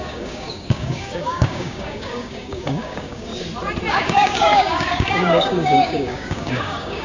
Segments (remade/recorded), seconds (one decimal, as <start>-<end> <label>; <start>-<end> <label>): 0.0-3.3 remade; 3.3-3.9 recorded; 3.9-7.0 remade